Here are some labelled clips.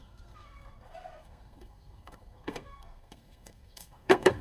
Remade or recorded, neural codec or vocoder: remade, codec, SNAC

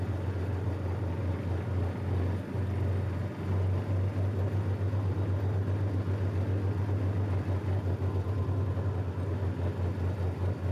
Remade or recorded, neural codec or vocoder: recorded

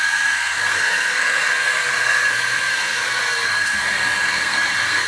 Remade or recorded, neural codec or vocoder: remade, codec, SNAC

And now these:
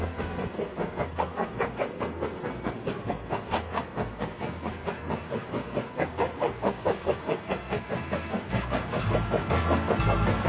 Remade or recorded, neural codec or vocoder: remade, codec, SNAC